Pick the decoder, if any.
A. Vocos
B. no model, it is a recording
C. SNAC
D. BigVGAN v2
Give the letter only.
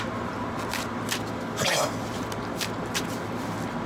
B